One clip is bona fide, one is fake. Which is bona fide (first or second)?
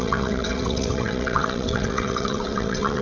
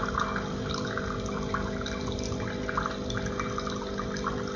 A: second